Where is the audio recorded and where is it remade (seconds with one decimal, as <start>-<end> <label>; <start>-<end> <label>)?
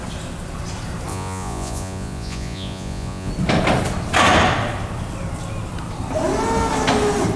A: 0.0-1.1 recorded; 1.1-3.3 remade; 3.3-7.4 recorded